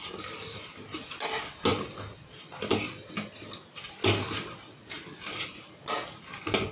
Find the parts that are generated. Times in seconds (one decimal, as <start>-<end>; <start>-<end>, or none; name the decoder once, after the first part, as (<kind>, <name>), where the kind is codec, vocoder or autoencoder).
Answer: none